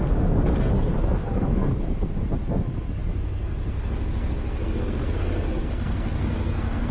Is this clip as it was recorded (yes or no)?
no